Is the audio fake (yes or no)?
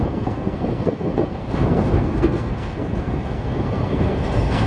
yes